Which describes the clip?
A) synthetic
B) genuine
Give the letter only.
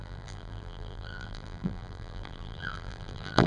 A